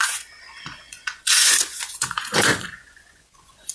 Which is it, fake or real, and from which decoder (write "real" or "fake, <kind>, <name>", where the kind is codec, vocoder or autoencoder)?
fake, vocoder, Vocos